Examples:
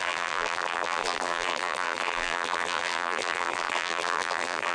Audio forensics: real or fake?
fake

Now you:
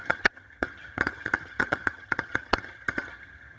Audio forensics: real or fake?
fake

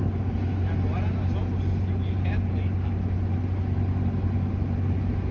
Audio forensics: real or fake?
real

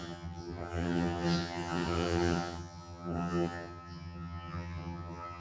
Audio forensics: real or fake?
fake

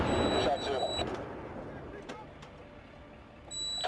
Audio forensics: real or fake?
real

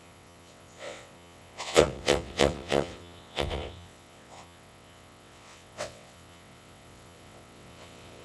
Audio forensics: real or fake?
fake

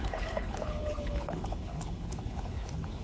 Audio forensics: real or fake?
fake